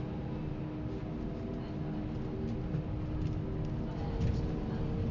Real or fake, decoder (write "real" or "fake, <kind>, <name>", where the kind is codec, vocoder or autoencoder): real